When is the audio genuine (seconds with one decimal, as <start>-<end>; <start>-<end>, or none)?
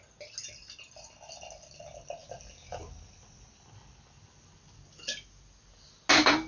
0.0-6.5